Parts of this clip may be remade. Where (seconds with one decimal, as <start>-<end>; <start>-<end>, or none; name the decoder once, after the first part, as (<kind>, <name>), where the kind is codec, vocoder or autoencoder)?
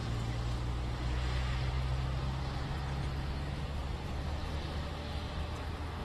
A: none